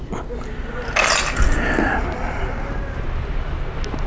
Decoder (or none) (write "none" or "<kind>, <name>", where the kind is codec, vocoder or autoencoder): none